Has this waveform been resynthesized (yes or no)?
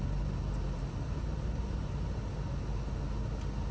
no